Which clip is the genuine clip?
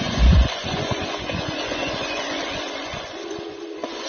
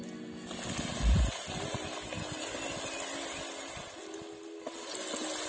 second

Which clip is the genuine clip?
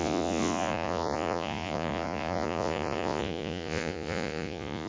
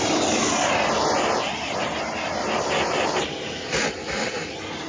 second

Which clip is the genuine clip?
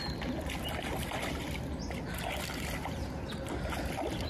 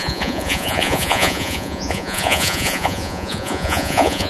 first